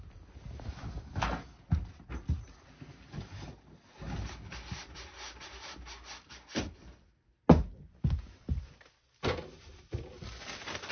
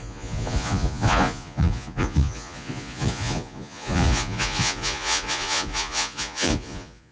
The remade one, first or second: second